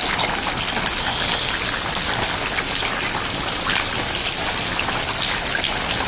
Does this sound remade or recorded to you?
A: recorded